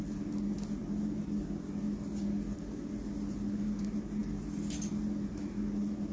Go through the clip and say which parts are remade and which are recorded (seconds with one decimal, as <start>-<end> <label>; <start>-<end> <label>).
0.0-6.1 recorded